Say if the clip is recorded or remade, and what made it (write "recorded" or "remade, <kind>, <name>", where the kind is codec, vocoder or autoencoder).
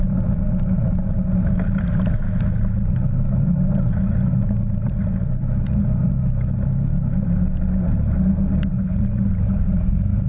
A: recorded